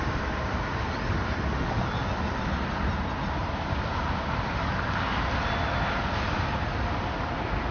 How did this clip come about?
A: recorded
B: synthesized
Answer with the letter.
A